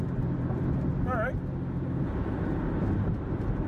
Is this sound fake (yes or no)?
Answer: no